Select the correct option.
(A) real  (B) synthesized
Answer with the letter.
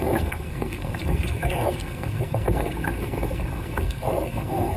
B